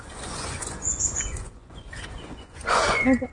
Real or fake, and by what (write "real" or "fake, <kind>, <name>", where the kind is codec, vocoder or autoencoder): fake, vocoder, Vocos